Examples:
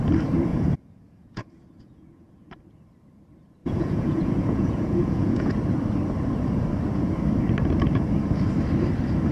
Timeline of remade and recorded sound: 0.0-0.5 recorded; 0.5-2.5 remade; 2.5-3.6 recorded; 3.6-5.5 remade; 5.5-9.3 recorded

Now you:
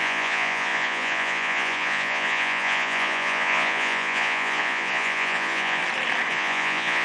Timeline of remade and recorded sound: 0.0-5.8 remade; 5.8-6.3 recorded; 6.3-7.0 remade

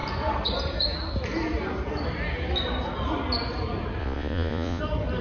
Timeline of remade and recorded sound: 0.0-4.0 recorded; 4.0-4.8 remade; 4.8-5.2 recorded

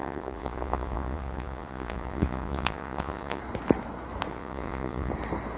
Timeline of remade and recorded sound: 0.0-3.4 remade; 3.4-4.3 recorded; 4.3-5.1 remade; 5.1-5.6 recorded

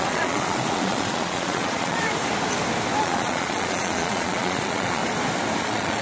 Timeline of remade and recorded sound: 0.0-2.0 remade; 2.0-3.0 recorded; 3.0-5.0 remade; 5.0-5.6 recorded; 5.6-6.0 remade

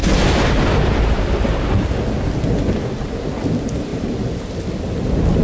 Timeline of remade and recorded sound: 0.0-5.4 recorded

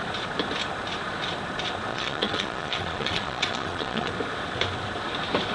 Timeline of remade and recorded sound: 0.0-1.9 recorded; 1.9-4.1 remade; 4.1-5.5 recorded

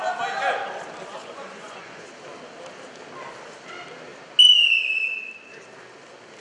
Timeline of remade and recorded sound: 0.0-1.2 recorded; 1.2-2.0 remade; 2.0-6.4 recorded